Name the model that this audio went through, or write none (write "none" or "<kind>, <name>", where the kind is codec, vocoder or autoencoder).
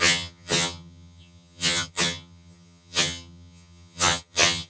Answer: vocoder, HiFi-GAN